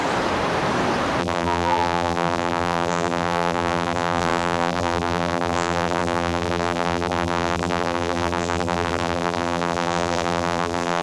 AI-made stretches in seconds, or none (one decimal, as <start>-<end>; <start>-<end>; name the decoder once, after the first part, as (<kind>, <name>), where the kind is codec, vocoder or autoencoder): 1.2-11.0 (vocoder, BigVGAN v2)